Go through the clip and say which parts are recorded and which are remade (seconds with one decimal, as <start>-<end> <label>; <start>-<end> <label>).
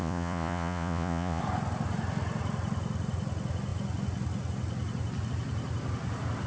0.0-1.4 remade; 1.4-6.5 recorded